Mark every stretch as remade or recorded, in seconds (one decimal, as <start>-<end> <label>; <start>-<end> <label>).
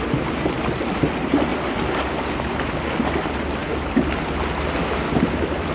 0.0-5.7 recorded